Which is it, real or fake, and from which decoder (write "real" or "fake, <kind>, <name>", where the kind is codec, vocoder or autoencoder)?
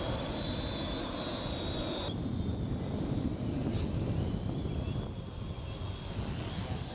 real